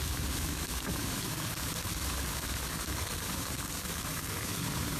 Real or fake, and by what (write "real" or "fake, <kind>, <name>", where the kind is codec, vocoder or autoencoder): fake, codec, DAC